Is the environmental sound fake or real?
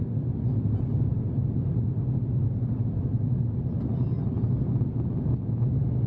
real